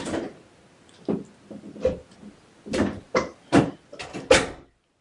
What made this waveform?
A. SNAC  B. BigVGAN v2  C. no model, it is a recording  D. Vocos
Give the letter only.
C